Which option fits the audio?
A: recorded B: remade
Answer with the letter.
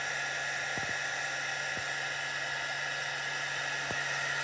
A